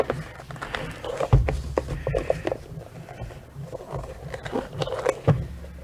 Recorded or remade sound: recorded